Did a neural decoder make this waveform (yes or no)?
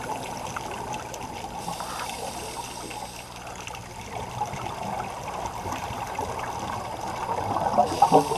no